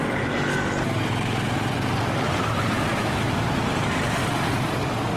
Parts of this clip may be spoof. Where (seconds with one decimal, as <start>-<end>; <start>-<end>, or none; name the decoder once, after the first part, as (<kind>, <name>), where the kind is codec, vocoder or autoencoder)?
2.9-3.4 (autoencoder, DAC-VAE)

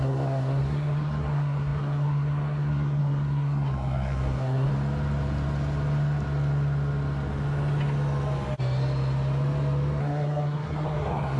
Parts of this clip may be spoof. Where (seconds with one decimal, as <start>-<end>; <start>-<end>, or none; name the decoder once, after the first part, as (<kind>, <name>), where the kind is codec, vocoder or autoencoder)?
0.0-4.7 (codec, SNAC); 10.0-11.4